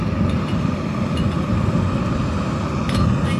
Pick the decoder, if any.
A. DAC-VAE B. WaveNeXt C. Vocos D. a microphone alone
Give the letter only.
D